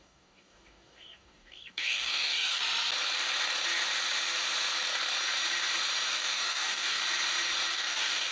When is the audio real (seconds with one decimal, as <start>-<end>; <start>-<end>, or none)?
2.6-6.1; 7.0-7.7